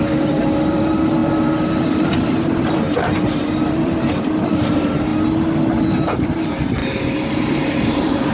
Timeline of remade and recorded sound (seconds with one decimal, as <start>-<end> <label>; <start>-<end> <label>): 0.0-5.1 remade; 5.1-5.9 recorded; 5.9-6.8 remade; 6.8-7.3 recorded; 7.3-8.3 remade

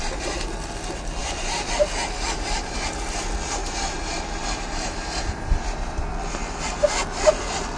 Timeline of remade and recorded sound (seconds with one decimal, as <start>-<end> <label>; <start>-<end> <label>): 0.0-1.2 recorded; 1.2-3.2 remade; 3.2-3.6 recorded; 3.6-6.1 remade; 6.1-7.8 recorded

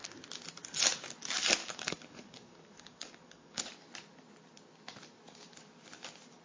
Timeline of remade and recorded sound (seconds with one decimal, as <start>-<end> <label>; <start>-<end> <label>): 0.0-1.6 recorded; 1.6-3.6 remade; 3.6-6.4 recorded

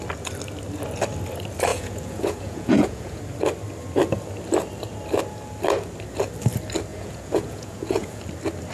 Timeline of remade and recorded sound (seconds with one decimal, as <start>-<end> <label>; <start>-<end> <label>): 0.0-1.7 recorded; 1.7-3.2 remade; 3.2-6.9 recorded; 6.9-8.2 remade; 8.2-8.7 recorded

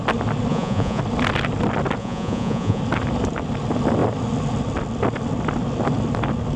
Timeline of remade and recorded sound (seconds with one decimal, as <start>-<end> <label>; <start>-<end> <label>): 0.0-0.5 recorded; 0.5-1.0 remade; 1.0-2.0 recorded; 2.0-2.8 remade; 2.8-6.6 recorded

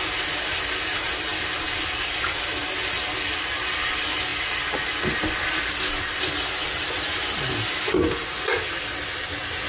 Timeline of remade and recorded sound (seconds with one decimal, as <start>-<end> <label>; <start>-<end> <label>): 0.0-9.7 recorded

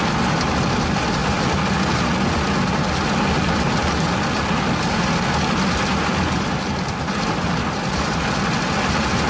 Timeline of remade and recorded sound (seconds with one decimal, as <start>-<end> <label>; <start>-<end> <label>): 0.0-9.3 recorded